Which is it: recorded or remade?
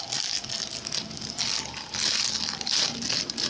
recorded